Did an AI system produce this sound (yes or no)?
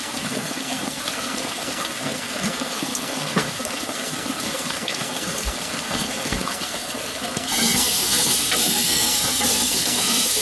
yes